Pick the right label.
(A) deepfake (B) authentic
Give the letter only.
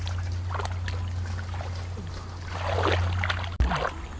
B